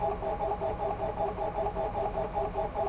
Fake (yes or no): no